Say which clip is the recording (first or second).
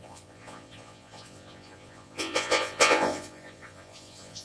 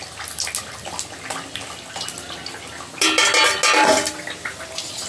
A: second